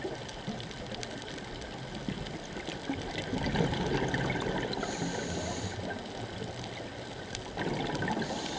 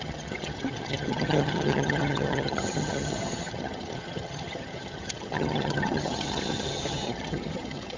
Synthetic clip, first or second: second